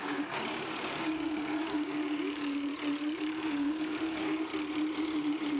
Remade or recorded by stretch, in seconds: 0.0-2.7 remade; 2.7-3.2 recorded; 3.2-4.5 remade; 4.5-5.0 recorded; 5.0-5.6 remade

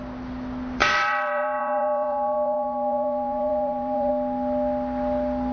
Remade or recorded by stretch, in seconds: 0.0-0.8 recorded; 0.8-4.1 remade; 4.1-5.5 recorded

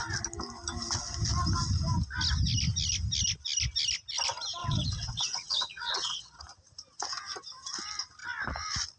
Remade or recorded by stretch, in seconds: 0.0-4.6 recorded; 4.6-6.4 remade; 6.4-9.0 recorded

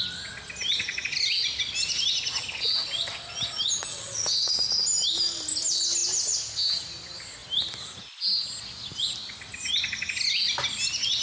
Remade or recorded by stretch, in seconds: 0.0-3.9 recorded; 3.9-4.5 remade; 4.5-11.2 recorded

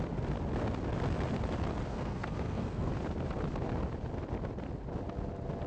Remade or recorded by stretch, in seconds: 0.0-1.9 recorded; 1.9-2.9 remade; 2.9-5.7 recorded

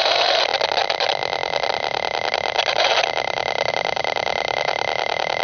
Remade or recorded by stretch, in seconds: 0.0-5.4 recorded

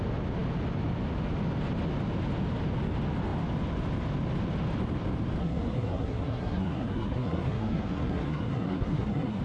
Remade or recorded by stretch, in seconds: 0.0-5.4 recorded; 5.4-9.4 remade